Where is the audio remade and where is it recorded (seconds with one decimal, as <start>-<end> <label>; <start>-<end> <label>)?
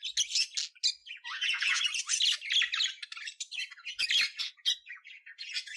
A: 0.0-1.0 recorded; 1.0-1.8 remade; 1.8-5.8 recorded